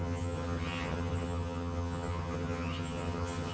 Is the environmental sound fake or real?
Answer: fake